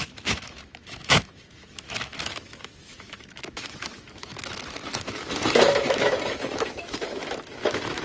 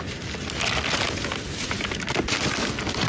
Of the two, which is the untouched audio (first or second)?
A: second